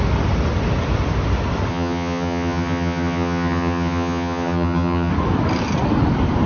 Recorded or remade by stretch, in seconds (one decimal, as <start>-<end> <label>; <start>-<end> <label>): 0.0-1.7 recorded; 1.7-5.1 remade; 5.1-6.5 recorded